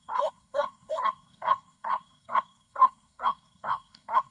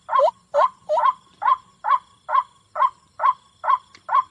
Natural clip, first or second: second